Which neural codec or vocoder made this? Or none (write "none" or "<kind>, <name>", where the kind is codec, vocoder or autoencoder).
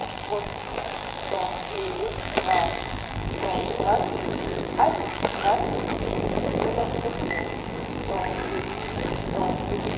vocoder, BigVGAN v2